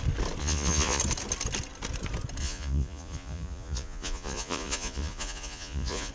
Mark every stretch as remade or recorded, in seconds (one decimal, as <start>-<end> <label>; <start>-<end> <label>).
0.0-0.4 recorded; 0.4-1.0 remade; 1.0-2.4 recorded; 2.4-6.1 remade